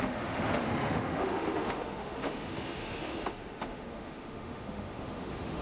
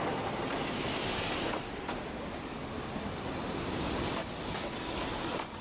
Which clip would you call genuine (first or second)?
second